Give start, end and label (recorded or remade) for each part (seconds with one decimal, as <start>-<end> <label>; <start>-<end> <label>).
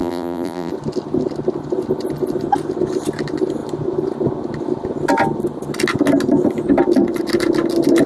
0.0-0.7 remade; 0.7-8.1 recorded